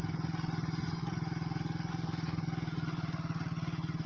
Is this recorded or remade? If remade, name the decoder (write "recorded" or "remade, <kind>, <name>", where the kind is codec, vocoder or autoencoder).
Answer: recorded